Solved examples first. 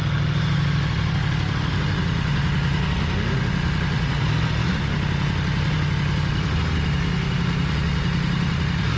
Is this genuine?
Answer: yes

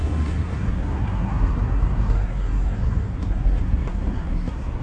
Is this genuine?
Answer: no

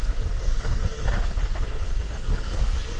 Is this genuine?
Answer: no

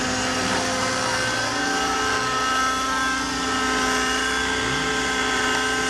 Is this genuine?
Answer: yes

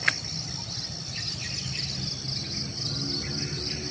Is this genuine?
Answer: yes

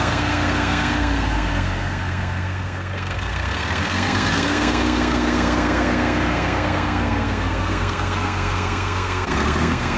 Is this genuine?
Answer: no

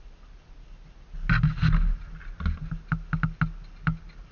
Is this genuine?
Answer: yes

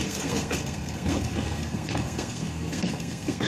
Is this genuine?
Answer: no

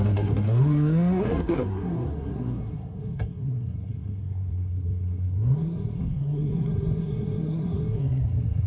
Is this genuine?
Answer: no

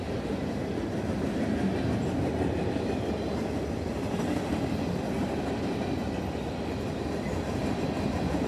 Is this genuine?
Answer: yes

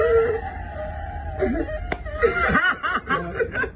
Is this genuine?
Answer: yes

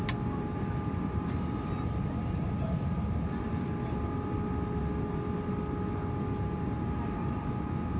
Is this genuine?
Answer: yes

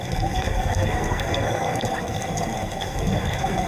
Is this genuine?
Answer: no